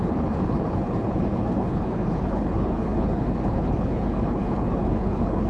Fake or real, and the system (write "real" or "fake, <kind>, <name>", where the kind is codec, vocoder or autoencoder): fake, codec, HILCodec